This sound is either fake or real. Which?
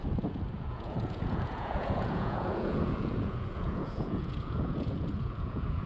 fake